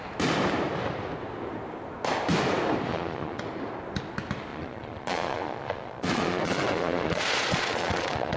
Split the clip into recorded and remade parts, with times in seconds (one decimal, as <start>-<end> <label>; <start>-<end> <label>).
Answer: 0.0-2.9 recorded; 2.9-3.4 remade; 3.4-4.5 recorded; 4.5-8.4 remade

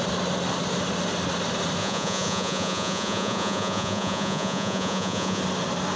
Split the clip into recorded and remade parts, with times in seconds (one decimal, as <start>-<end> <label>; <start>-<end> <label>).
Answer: 0.0-1.8 recorded; 1.8-5.4 remade; 5.4-6.0 recorded

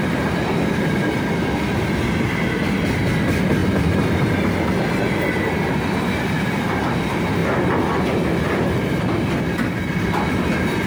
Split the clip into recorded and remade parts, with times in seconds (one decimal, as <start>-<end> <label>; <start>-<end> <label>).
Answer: 0.0-10.9 recorded

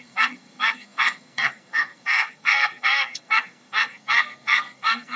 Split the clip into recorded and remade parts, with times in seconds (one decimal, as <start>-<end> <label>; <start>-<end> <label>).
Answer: 0.0-5.2 remade

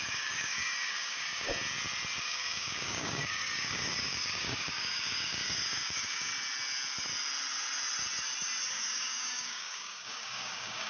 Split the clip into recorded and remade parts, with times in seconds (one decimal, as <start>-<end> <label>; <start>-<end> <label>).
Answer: 0.0-1.5 remade; 1.5-2.2 recorded; 2.2-6.3 remade; 6.3-8.7 recorded; 8.7-10.9 remade

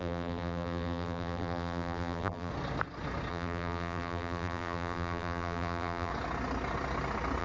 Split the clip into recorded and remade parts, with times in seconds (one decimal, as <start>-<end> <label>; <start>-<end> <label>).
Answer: 0.0-2.5 remade; 2.5-3.3 recorded; 3.3-6.1 remade; 6.1-7.4 recorded